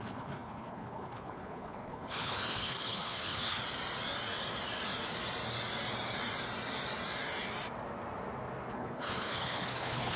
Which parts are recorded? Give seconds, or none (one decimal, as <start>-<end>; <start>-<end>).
3.6-8.7